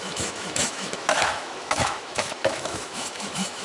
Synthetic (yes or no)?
yes